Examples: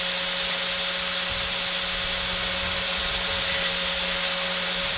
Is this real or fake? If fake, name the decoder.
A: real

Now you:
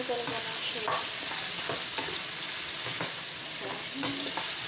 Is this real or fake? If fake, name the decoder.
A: real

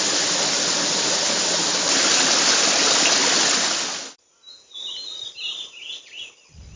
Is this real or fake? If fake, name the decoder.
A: real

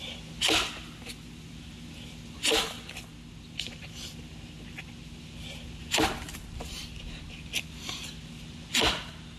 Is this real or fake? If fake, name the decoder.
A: real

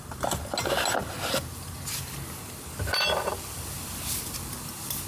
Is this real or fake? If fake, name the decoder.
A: real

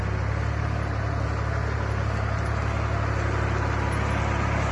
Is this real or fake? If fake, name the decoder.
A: real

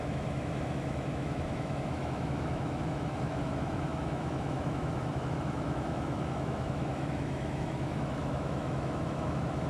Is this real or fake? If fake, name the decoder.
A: fake, autoencoder, DAC-VAE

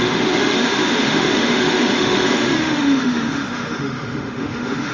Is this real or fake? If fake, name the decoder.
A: fake, autoencoder, DAC-VAE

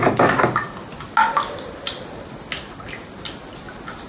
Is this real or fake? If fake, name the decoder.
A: real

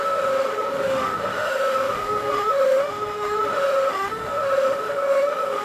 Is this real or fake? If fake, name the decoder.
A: fake, autoencoder, DAC-VAE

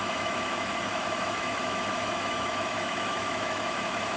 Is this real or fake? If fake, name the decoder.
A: fake, autoencoder, DAC-VAE